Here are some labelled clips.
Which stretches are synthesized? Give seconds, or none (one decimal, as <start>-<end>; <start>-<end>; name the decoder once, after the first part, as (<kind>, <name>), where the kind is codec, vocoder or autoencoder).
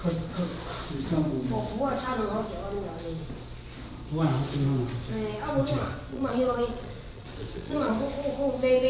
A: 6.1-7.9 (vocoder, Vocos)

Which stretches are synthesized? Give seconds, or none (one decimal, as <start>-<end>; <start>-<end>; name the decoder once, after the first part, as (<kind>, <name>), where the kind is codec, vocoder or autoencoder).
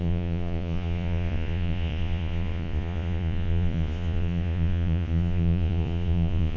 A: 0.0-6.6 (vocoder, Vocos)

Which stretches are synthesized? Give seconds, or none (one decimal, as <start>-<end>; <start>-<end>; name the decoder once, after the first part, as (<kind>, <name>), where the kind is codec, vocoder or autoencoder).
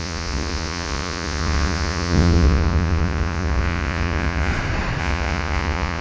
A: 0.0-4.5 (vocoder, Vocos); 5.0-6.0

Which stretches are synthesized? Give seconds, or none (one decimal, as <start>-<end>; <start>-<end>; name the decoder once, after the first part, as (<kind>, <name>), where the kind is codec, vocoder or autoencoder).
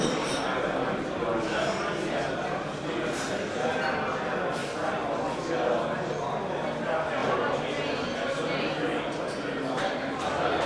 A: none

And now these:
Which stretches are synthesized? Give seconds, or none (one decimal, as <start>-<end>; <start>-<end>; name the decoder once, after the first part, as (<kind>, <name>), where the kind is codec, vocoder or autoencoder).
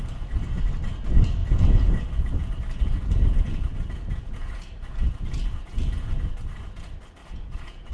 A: 1.4-6.1 (vocoder, Vocos); 7.2-7.9